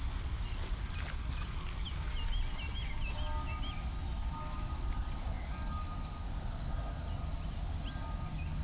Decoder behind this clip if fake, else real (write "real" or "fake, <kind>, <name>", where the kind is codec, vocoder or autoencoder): real